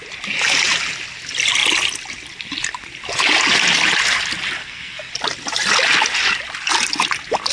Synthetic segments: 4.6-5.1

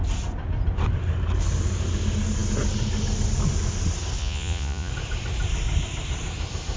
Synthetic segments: 4.2-4.9